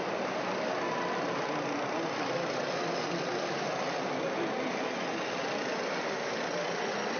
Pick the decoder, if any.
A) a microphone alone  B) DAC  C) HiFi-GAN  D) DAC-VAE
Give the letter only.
A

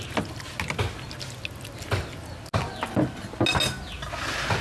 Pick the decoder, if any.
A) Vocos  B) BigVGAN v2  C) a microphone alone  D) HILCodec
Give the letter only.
C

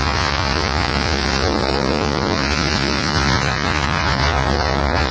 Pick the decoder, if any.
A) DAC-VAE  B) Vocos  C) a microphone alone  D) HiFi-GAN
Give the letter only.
B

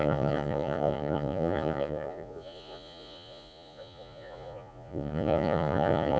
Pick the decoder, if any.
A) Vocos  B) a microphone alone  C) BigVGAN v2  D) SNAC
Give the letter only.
A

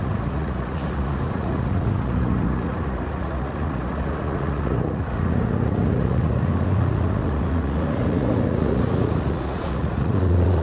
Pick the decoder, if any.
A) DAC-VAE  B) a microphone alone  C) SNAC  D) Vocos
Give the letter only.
D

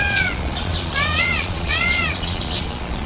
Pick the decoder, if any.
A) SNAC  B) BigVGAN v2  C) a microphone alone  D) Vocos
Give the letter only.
D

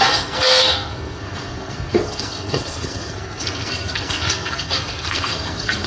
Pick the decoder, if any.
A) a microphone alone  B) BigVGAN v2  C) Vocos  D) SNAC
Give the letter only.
D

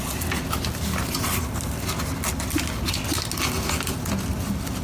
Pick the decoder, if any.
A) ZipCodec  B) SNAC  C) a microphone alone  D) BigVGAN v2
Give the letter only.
C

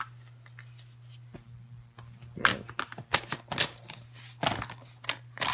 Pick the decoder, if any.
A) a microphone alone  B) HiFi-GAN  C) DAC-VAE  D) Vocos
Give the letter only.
A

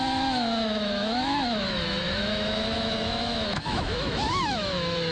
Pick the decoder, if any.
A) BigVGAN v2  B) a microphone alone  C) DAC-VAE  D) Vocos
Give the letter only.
C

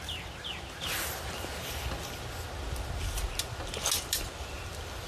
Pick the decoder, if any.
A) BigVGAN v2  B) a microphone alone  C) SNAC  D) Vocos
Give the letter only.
B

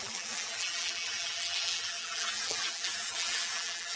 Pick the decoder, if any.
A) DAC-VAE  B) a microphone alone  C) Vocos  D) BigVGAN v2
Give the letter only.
D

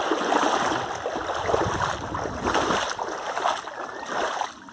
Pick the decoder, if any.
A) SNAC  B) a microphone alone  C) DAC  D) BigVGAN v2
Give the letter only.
B